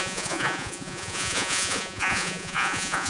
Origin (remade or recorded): remade